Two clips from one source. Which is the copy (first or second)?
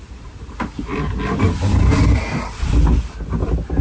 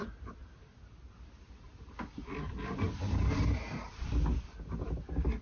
second